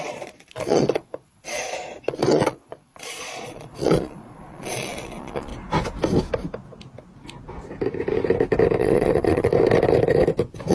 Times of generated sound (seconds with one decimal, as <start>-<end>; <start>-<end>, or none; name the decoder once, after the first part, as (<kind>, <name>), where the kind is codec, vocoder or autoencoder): 0.0-5.5 (vocoder, Vocos); 8.8-9.5